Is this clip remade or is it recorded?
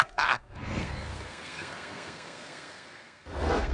remade